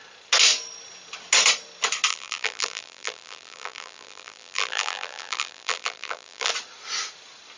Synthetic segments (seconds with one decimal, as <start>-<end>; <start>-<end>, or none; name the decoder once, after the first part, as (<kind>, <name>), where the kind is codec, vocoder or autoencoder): 2.1-6.5 (vocoder, BigVGAN v2)